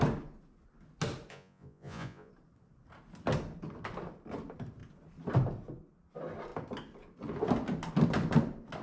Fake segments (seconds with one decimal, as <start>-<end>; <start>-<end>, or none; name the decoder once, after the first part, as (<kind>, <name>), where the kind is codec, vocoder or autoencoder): 1.3-2.3 (vocoder, Vocos)